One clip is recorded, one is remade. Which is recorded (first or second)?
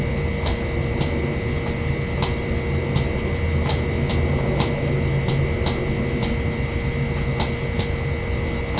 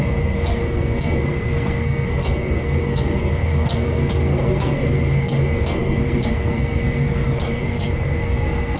first